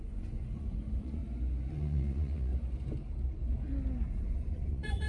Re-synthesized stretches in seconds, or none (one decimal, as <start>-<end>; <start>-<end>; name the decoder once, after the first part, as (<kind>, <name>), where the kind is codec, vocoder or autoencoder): 0.0-1.2 (vocoder, Vocos); 1.7-2.5; 4.2-5.1